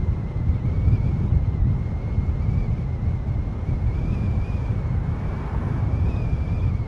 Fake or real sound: real